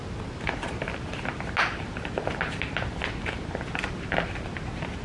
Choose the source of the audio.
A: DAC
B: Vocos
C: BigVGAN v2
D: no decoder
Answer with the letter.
D